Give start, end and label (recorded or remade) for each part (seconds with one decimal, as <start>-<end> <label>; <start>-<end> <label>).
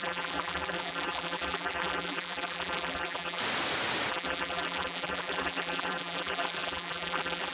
0.0-3.4 remade; 3.4-4.1 recorded; 4.1-7.5 remade